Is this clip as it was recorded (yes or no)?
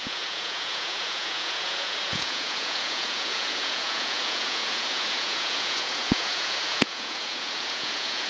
no